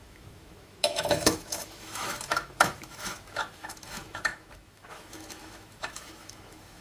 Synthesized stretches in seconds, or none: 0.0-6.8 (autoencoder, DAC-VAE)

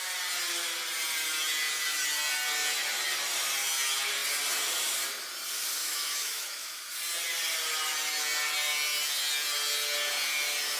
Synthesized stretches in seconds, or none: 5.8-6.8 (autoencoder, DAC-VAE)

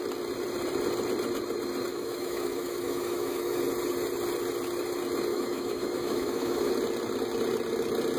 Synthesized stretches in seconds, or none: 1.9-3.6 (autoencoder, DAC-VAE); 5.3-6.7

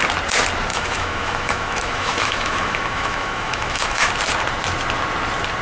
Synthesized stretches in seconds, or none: 0.7-4.1 (autoencoder, DAC-VAE)